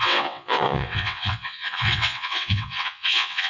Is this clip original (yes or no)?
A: no